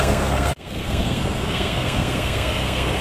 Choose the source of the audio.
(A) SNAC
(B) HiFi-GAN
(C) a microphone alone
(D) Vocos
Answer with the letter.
A